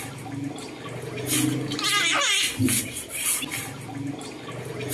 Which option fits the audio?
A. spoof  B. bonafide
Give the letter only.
B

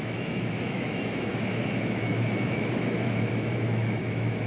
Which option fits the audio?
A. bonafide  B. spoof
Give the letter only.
B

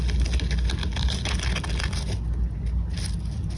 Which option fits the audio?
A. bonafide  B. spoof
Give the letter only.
A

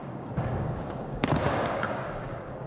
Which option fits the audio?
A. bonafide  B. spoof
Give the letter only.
B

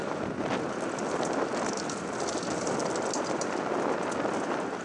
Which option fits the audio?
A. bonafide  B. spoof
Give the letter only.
A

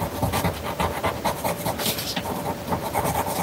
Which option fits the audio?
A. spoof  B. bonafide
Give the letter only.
B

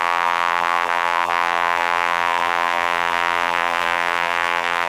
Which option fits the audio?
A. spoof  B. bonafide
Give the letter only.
A